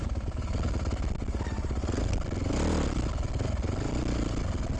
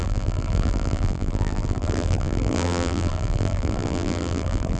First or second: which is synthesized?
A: second